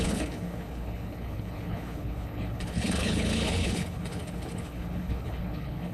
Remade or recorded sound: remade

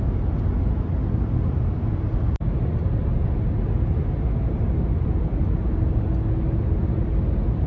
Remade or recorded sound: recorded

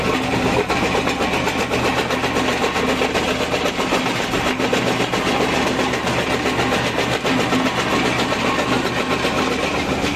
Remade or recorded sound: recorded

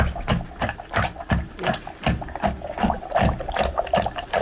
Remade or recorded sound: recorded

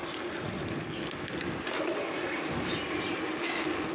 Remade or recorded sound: recorded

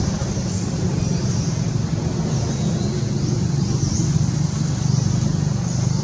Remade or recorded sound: recorded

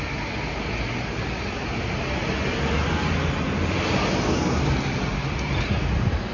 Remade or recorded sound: recorded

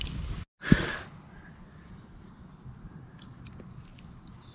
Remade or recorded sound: recorded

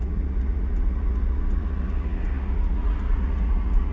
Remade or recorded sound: remade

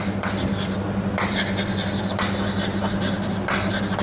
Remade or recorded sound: recorded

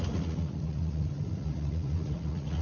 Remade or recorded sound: remade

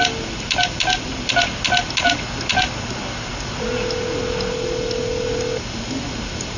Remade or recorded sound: recorded